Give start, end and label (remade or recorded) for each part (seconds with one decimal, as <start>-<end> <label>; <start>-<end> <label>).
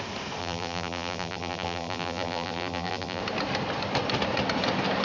0.0-0.4 recorded; 0.4-3.2 remade; 3.2-5.0 recorded